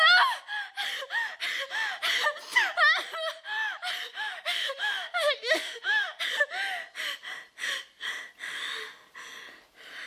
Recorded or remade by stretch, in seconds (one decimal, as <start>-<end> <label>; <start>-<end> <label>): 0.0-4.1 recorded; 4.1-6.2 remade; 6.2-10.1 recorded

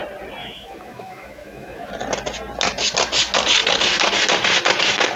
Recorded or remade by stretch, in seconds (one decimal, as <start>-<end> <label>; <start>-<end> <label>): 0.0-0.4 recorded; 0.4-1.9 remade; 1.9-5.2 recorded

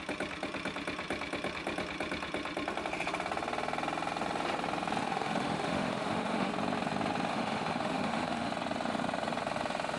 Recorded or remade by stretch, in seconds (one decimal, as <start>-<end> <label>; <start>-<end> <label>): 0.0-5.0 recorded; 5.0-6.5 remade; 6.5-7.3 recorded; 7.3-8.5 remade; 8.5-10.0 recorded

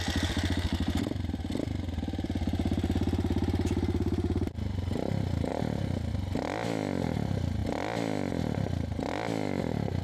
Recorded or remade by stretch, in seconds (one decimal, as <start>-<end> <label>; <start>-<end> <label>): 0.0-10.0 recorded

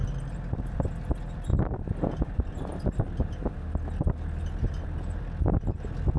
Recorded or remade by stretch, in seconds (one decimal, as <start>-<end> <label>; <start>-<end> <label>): 0.0-6.2 recorded